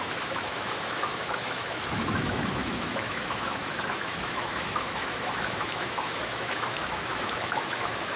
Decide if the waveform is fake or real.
fake